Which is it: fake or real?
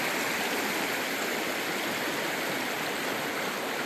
real